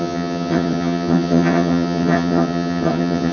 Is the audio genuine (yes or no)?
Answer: no